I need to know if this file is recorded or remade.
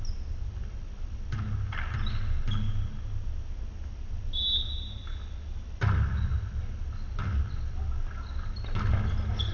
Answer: recorded